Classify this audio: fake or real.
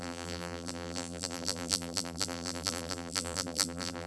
fake